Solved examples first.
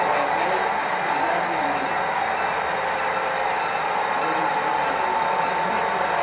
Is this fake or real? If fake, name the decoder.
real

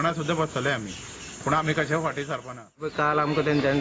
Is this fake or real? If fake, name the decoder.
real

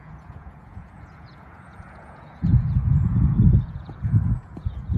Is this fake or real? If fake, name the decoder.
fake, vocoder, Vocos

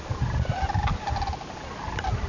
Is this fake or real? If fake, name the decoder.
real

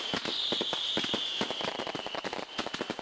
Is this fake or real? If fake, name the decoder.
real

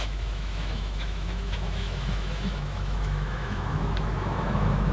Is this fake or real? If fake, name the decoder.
fake, autoencoder, DAC-VAE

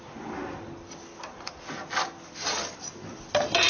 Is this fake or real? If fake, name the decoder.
real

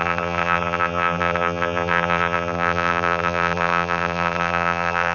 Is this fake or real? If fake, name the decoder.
fake, vocoder, BigVGAN v2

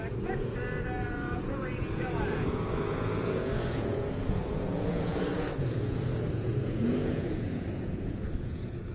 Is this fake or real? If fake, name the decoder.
fake, vocoder, Vocos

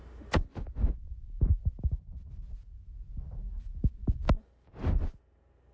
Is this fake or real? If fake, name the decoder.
real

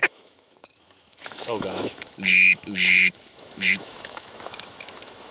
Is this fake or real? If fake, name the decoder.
fake, autoencoder, DAC-VAE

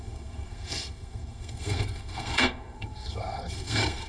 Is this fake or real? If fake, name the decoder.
fake, codec, SNAC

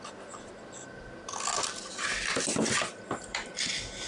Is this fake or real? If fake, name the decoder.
real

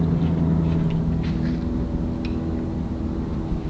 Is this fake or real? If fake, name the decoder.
real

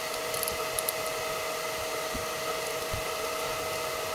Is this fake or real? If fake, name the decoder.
real